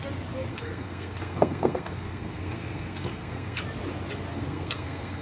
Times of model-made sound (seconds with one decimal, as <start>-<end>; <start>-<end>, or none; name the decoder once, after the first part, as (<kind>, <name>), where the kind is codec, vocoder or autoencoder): 0.5-3.6 (codec, SNAC); 4.3-5.2